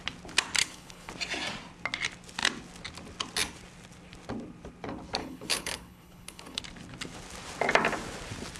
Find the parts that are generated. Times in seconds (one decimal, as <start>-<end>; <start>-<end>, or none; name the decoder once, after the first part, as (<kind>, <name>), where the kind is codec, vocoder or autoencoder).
0.6-1.1 (codec, HILCodec); 5.2-6.6